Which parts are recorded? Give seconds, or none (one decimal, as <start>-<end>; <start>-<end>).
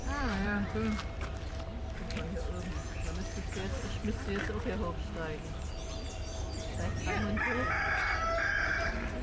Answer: 0.7-9.2